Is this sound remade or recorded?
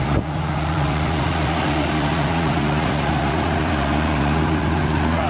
remade